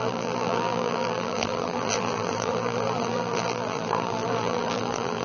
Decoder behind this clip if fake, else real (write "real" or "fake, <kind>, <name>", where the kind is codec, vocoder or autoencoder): fake, vocoder, BigVGAN v2